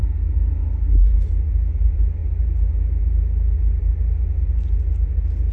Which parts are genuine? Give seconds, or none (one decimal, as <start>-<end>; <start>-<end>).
0.9-5.5